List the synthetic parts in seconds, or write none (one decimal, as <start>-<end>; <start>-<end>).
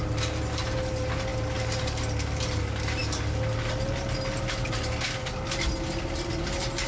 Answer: none